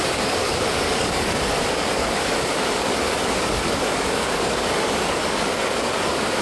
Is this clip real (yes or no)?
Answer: no